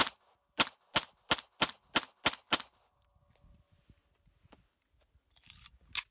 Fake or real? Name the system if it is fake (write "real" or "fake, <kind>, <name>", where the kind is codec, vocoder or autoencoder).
real